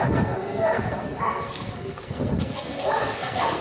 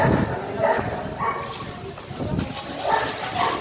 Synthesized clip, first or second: first